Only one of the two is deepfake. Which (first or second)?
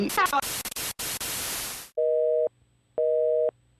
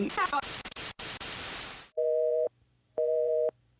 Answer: second